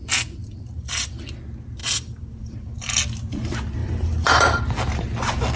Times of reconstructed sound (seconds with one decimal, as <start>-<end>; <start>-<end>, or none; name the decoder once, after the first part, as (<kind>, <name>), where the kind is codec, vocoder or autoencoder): 0.4-1.2 (vocoder, BigVGAN v2); 1.8-3.0; 3.8-4.6